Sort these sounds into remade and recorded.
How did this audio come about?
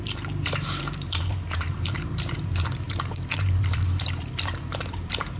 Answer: remade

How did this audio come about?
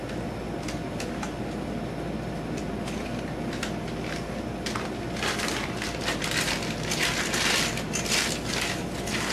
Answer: recorded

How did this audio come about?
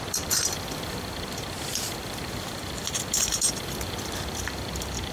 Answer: remade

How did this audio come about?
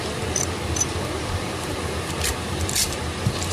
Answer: remade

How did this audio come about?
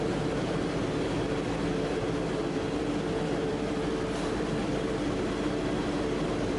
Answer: remade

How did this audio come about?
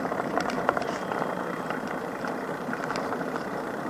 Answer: remade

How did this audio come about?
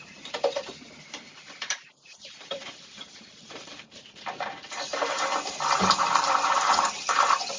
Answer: remade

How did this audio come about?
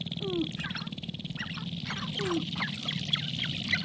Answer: recorded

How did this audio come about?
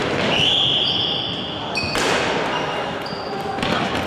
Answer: recorded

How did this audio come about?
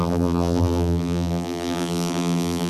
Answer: remade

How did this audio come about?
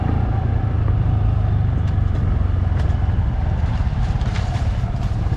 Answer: recorded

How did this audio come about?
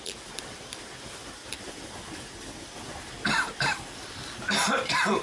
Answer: remade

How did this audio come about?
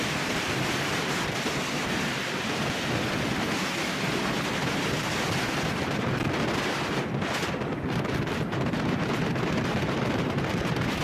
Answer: recorded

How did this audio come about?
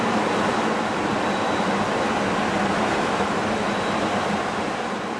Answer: remade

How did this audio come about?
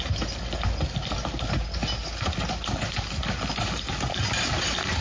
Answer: recorded